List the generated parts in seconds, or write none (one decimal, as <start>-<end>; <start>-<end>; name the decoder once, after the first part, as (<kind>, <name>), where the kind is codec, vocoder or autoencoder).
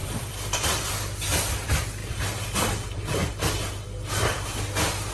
0.0-0.9 (vocoder, BigVGAN v2); 2.0-4.6